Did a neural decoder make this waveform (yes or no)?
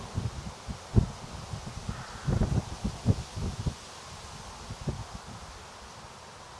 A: no